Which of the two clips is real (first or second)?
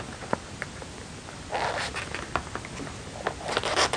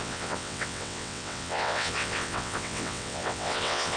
first